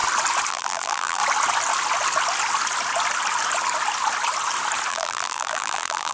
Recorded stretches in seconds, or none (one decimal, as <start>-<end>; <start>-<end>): 0.0-0.5; 1.2-4.9